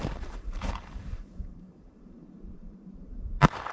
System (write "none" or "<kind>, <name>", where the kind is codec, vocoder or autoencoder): vocoder, BigVGAN v2